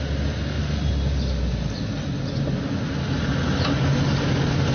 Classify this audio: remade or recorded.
recorded